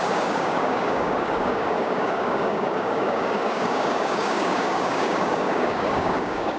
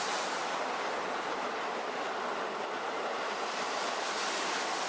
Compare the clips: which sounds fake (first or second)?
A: first